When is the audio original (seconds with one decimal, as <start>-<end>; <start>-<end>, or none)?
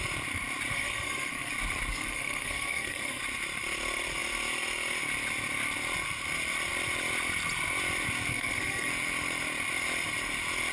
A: 0.0-0.7; 1.5-1.9; 3.2-8.3; 8.9-10.7